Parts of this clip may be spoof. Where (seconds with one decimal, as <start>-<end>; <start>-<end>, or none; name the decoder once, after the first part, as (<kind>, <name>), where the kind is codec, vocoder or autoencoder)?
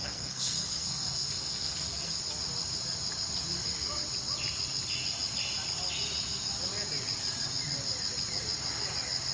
0.0-2.2 (codec, SNAC)